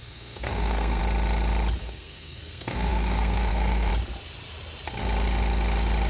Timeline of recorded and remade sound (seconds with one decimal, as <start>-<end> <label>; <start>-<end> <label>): 0.0-1.0 remade; 1.0-1.8 recorded; 1.8-3.9 remade; 3.9-6.1 recorded